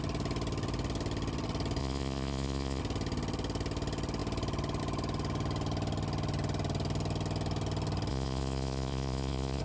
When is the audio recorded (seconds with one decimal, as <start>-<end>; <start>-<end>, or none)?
0.0-1.8; 2.8-8.1